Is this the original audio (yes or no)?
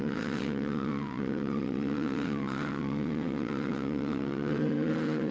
no